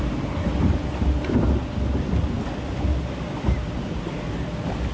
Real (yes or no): yes